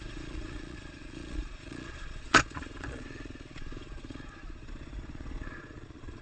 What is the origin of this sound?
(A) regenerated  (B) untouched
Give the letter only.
A